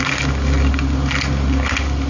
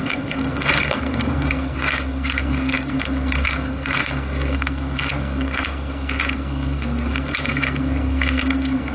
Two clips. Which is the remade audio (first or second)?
second